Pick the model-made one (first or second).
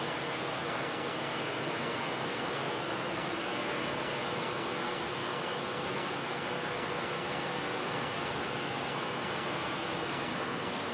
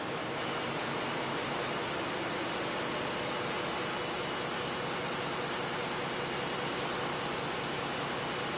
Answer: first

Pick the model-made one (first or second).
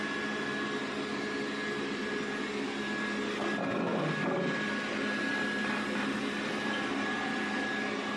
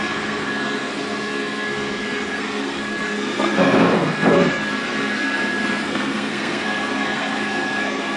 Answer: second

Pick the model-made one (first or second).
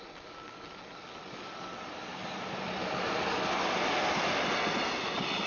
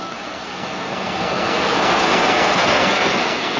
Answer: second